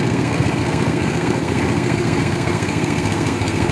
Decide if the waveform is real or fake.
fake